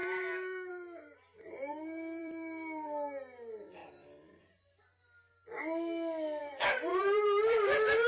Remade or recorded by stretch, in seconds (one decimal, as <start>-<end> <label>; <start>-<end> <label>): 0.0-3.8 remade; 3.8-6.4 recorded; 6.4-8.1 remade